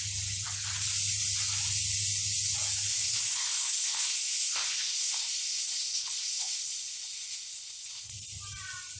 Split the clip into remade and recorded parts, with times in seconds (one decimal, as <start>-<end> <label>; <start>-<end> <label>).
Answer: 0.0-2.9 recorded; 2.9-8.1 remade; 8.1-9.0 recorded